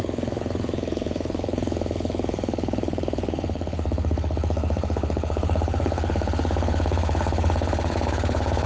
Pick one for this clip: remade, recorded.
remade